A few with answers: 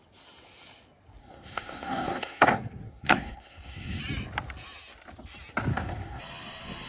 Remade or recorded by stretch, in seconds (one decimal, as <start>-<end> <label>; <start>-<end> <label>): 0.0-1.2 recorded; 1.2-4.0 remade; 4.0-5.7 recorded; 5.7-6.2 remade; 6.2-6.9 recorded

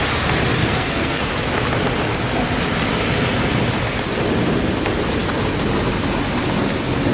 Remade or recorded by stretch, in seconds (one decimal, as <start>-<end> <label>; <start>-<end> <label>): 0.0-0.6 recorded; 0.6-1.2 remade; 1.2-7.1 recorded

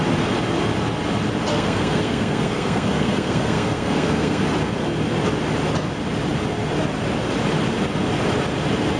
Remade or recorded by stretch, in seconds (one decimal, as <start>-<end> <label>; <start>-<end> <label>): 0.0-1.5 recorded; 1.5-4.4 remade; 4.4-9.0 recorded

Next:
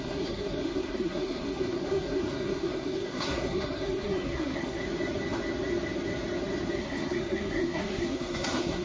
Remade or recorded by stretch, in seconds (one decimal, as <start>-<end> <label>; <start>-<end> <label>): 0.0-4.8 remade; 4.8-6.8 recorded; 6.8-8.8 remade

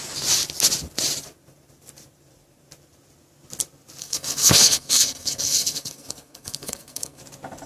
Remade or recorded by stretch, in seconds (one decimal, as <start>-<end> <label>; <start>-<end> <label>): 0.0-4.0 recorded; 4.0-7.2 remade; 7.2-7.7 recorded